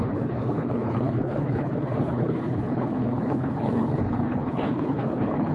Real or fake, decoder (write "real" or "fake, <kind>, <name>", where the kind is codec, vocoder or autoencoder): fake, codec, HILCodec